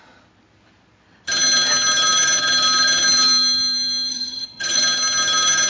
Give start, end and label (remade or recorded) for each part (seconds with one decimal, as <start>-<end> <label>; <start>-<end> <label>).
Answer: 0.0-4.1 recorded; 4.1-4.8 remade; 4.8-5.7 recorded